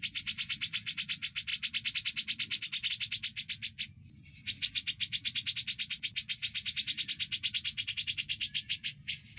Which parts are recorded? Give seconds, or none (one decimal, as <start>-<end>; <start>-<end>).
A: 0.0-9.4